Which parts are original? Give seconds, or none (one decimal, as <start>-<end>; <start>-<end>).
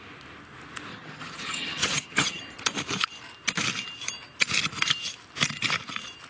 0.0-0.9; 2.4-6.3